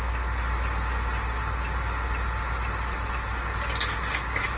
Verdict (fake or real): real